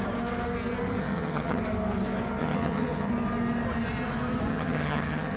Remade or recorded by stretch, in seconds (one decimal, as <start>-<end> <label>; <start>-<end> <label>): 0.0-1.0 recorded; 1.0-1.6 remade; 1.6-2.4 recorded; 2.4-3.1 remade; 3.1-4.5 recorded; 4.5-5.4 remade